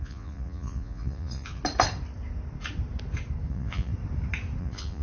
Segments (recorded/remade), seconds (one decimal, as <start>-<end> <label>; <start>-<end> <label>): 0.0-1.6 remade; 1.6-3.5 recorded; 3.5-3.9 remade; 3.9-4.6 recorded; 4.6-5.0 remade